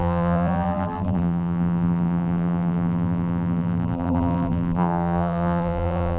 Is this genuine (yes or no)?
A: no